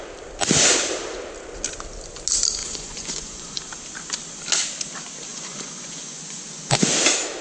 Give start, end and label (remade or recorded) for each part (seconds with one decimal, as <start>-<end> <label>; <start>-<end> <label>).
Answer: 0.0-2.6 recorded; 2.6-3.6 remade; 3.6-5.3 recorded; 5.3-6.9 remade; 6.9-7.4 recorded